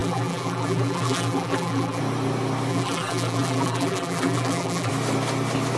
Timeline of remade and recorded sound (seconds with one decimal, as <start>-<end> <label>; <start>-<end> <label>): 0.0-2.0 remade; 2.0-2.7 recorded; 2.7-4.9 remade; 4.9-5.8 recorded